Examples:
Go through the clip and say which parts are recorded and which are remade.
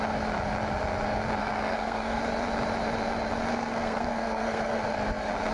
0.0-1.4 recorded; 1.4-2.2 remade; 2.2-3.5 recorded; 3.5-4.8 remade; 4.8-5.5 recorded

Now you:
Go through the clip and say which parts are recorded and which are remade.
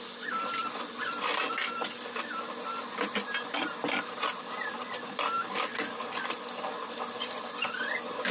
0.0-8.3 recorded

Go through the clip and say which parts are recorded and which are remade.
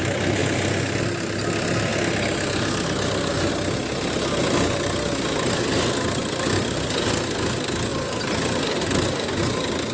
0.0-9.9 recorded